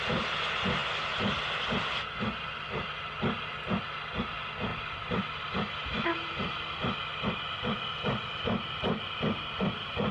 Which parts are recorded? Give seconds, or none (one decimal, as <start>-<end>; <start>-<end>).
0.0-10.1